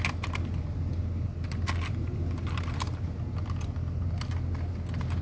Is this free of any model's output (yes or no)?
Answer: yes